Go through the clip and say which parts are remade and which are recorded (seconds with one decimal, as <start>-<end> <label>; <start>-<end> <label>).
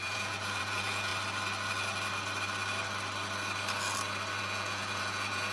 0.0-1.1 remade; 1.1-4.4 recorded; 4.4-5.5 remade